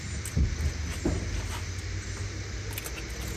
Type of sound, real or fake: real